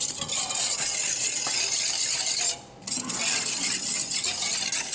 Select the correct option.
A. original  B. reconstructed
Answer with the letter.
A